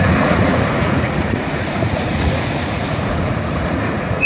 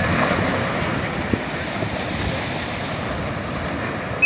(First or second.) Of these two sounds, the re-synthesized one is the first